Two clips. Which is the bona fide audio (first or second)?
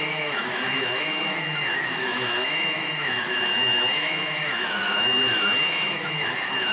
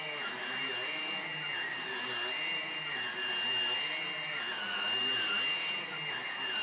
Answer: second